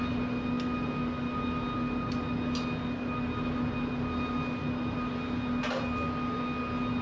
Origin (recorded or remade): recorded